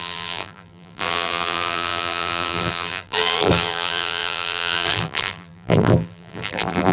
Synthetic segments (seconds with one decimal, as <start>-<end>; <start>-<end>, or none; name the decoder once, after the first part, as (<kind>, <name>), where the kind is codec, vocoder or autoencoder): 0.0-6.9 (vocoder, BigVGAN v2)